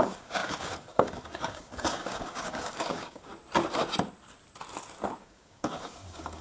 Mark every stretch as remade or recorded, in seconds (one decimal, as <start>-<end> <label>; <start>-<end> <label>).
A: 0.0-3.3 remade; 3.3-5.2 recorded; 5.2-6.4 remade